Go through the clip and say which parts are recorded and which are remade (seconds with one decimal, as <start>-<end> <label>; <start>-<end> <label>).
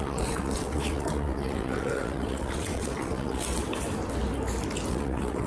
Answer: 0.0-3.6 remade; 3.6-4.9 recorded; 4.9-5.5 remade